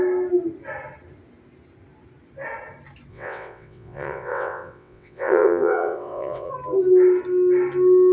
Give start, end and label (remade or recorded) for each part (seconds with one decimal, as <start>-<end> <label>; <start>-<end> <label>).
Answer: 0.0-3.1 recorded; 3.1-6.5 remade; 6.5-8.1 recorded